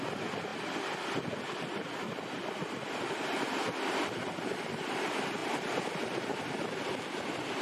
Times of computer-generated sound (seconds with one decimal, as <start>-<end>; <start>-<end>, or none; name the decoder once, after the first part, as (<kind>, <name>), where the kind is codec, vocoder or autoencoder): none